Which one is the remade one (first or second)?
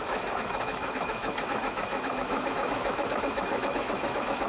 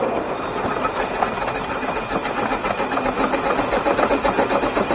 first